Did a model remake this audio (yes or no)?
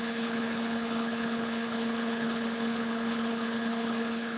yes